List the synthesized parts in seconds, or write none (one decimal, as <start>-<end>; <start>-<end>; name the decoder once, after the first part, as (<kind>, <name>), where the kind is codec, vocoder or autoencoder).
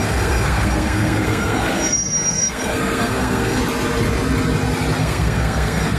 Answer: 0.0-3.6 (codec, SNAC); 5.0-6.0